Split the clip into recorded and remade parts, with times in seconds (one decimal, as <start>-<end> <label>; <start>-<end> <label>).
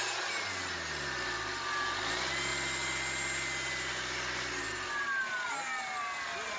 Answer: 0.0-6.6 recorded